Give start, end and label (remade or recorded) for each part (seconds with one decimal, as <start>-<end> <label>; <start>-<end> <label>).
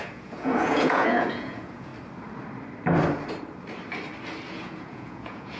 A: 0.0-1.9 remade; 1.9-4.5 recorded; 4.5-5.6 remade